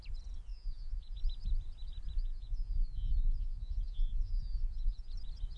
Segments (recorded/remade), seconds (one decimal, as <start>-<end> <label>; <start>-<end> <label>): 0.0-0.5 recorded; 0.5-1.2 remade; 1.2-2.2 recorded; 2.2-5.1 remade; 5.1-5.6 recorded